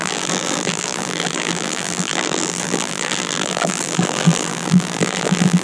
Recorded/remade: remade